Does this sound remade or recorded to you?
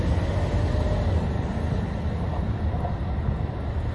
recorded